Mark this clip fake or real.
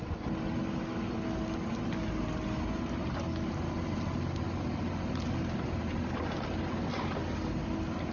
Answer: real